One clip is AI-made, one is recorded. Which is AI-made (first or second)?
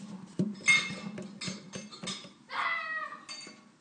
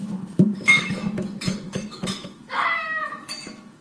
second